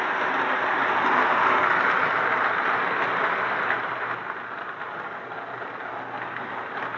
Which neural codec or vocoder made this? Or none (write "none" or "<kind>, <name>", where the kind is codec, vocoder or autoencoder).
none